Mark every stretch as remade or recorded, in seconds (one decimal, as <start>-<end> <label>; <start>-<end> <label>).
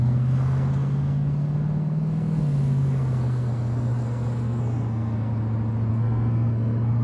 0.0-5.3 remade; 5.3-5.9 recorded; 5.9-7.0 remade